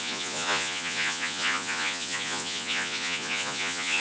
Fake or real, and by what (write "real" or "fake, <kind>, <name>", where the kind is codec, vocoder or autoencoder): fake, vocoder, Vocos